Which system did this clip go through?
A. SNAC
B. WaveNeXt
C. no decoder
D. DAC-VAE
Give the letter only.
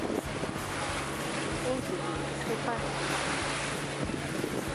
C